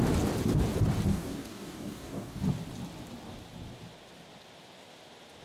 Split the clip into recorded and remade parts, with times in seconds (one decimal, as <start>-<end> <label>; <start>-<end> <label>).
0.0-1.1 recorded; 1.1-2.4 remade; 2.4-5.4 recorded